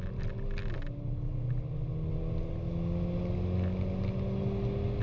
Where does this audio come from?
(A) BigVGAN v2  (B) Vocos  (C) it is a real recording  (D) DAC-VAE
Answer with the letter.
C